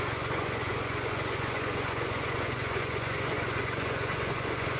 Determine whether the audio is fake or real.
fake